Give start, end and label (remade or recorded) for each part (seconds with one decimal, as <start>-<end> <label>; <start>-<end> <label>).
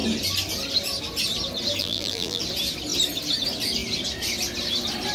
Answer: 0.0-1.8 recorded; 1.8-2.4 remade; 2.4-5.1 recorded